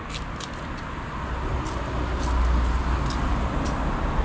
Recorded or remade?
recorded